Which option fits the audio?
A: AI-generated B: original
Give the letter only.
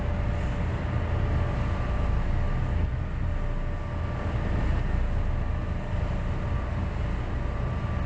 B